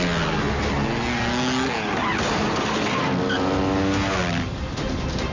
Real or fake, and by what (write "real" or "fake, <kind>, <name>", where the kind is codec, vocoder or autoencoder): real